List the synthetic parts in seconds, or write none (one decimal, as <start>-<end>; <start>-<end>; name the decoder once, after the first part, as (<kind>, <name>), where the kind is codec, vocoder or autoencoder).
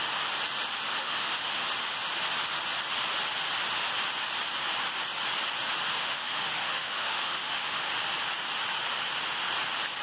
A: 0.9-1.6 (autoencoder, DAC-VAE); 5.9-7.9